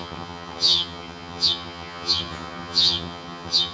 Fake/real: fake